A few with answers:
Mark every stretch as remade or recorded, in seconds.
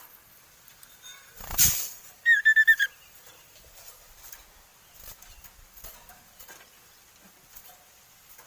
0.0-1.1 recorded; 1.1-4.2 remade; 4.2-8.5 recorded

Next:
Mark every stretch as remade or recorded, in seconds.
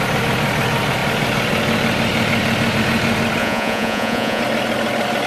0.0-3.4 recorded; 3.4-4.4 remade; 4.4-5.3 recorded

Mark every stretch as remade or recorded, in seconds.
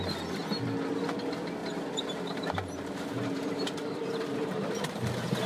0.0-1.6 recorded; 1.6-4.7 remade; 4.7-5.5 recorded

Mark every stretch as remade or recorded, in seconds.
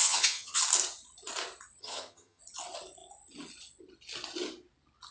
0.0-0.6 remade; 0.6-1.8 recorded; 1.8-2.4 remade; 2.4-5.1 recorded